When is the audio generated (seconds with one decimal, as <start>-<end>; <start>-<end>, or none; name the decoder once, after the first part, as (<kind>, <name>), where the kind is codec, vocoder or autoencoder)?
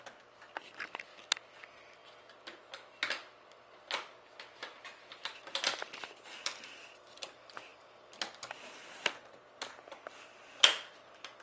none